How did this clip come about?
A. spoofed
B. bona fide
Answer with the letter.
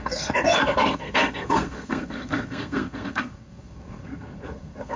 A